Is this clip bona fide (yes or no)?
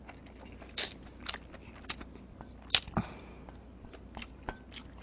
yes